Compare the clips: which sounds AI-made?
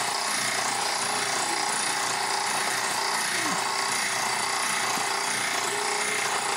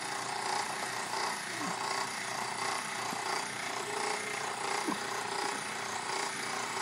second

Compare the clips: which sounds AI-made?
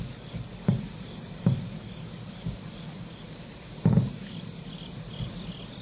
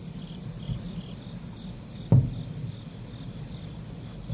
first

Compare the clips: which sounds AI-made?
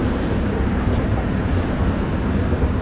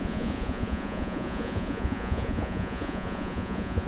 second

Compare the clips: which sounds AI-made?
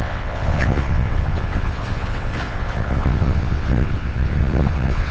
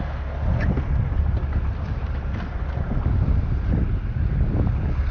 first